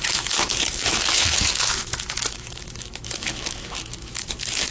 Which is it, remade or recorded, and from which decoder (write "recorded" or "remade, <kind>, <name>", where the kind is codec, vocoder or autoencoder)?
remade, autoencoder, DAC-VAE